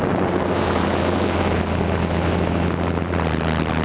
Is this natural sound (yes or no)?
yes